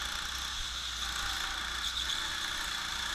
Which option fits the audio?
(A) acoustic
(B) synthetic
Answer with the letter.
A